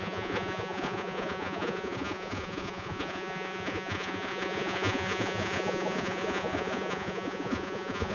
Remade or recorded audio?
remade